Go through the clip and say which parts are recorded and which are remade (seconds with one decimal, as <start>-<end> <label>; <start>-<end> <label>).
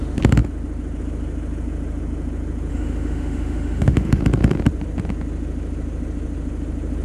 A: 0.0-2.7 recorded; 2.7-4.2 remade; 4.2-7.0 recorded